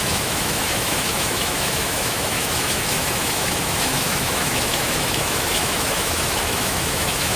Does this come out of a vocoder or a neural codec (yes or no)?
yes